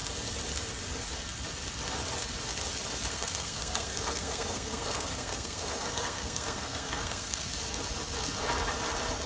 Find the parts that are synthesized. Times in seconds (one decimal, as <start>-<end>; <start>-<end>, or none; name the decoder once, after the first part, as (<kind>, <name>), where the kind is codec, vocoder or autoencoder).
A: 3.1-7.5 (codec, SNAC)